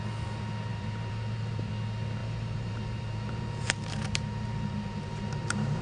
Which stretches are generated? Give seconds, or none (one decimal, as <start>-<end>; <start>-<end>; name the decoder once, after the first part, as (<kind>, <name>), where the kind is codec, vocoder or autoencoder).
0.7-1.7 (vocoder, BigVGAN v2); 2.2-5.8